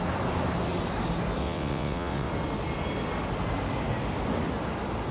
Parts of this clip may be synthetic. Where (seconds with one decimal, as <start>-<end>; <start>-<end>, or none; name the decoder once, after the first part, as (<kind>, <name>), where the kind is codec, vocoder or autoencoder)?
1.4-2.3 (vocoder, WaveNeXt)